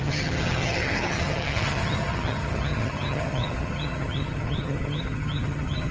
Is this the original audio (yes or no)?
no